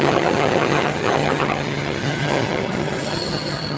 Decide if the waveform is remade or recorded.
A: remade